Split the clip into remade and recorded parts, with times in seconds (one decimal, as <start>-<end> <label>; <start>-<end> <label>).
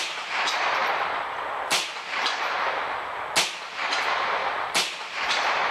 0.0-0.8 recorded; 0.8-1.9 remade; 1.9-4.4 recorded; 4.4-5.7 remade